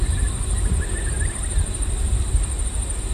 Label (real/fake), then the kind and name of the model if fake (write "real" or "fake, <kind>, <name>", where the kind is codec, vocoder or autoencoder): real